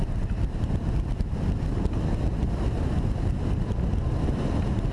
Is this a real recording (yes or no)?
yes